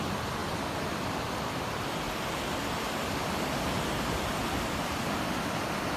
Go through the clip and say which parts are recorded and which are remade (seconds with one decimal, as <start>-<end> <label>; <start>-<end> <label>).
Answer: 0.0-6.0 recorded